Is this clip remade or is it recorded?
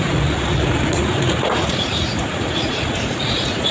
remade